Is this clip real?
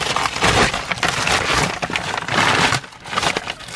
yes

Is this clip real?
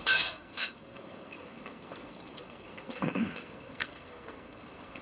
no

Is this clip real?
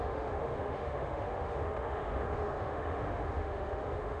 no